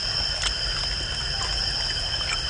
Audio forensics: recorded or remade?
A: recorded